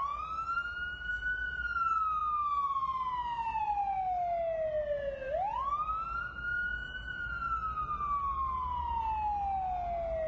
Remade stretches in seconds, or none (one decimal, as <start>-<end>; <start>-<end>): none